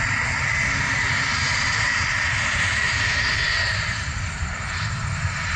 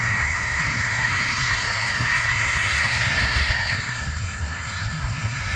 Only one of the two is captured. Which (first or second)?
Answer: first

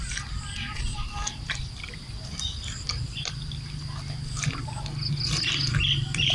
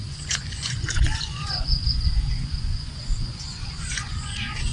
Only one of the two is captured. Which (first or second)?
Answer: first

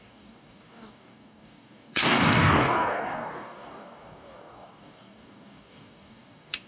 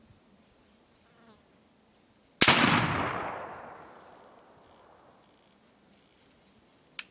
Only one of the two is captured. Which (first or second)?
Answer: second